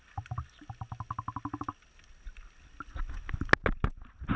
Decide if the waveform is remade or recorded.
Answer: recorded